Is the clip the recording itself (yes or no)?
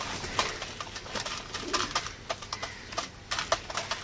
yes